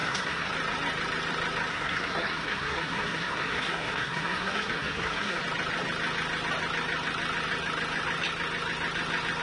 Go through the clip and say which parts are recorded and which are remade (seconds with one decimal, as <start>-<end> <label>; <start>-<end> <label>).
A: 0.0-0.5 remade; 0.5-1.7 recorded; 1.7-5.4 remade; 5.4-9.4 recorded